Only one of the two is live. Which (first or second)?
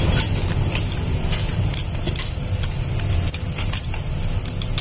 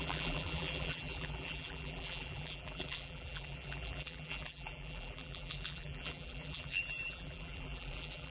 first